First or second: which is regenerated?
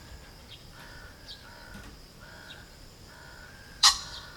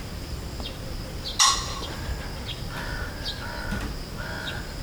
first